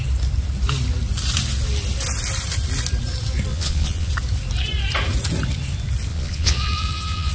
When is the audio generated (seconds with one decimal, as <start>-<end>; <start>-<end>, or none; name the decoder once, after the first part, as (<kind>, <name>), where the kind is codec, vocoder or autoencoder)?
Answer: 3.5-4.1 (vocoder, Vocos); 6.1-7.3